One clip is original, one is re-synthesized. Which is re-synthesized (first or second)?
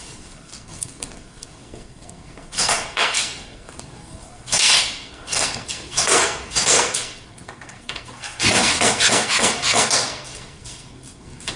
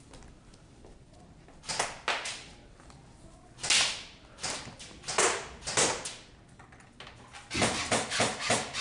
first